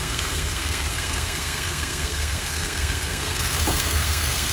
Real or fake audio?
fake